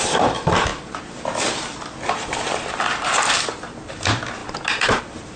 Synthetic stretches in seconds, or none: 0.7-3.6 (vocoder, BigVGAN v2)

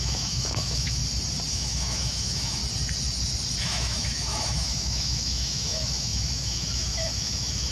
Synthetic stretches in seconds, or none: 0.0-1.0 (autoencoder, DAC-VAE); 1.5-2.6; 3.6-7.7

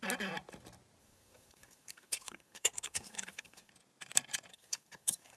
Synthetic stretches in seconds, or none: 1.0-3.7 (codec, SNAC); 4.5-5.4

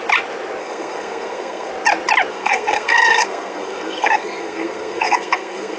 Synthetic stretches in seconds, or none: 0.6-1.7 (codec, SNAC); 2.3-5.8

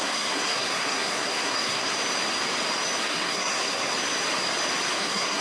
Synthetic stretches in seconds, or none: 0.0-1.9 (codec, SNAC); 3.0-3.9; 5.0-5.4

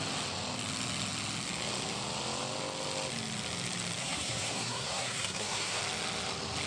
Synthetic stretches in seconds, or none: 4.0-5.8 (codec, SNAC)